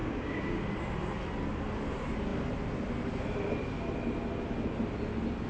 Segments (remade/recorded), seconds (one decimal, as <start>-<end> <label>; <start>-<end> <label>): 0.0-0.6 remade; 0.6-5.5 recorded